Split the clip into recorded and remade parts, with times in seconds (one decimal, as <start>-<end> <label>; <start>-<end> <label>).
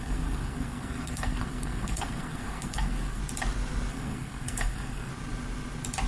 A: 0.0-3.2 remade; 3.2-3.9 recorded; 3.9-5.1 remade; 5.1-6.1 recorded